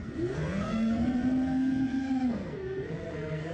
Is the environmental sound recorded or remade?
remade